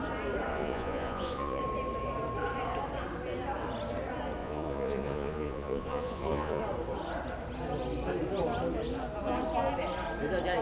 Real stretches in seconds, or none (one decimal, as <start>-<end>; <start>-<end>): 0.0-0.5; 1.6-4.4; 6.6-10.6